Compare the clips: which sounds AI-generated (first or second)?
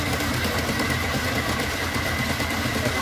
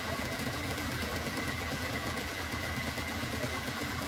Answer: second